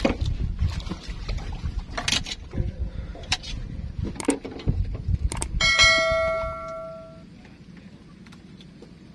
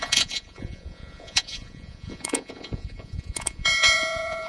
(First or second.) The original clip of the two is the first